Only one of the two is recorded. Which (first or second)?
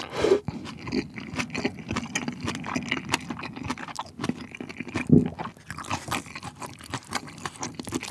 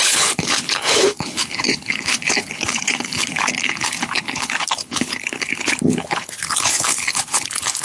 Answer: first